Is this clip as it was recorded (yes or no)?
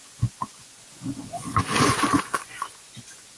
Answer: no